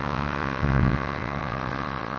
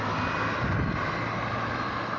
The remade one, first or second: first